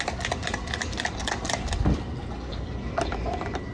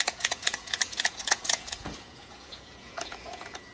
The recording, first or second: first